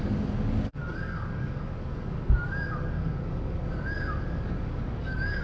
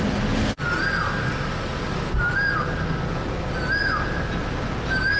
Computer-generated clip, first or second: first